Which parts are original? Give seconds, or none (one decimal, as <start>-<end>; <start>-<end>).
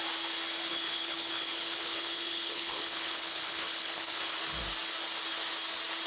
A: 0.0-0.7; 4.4-6.1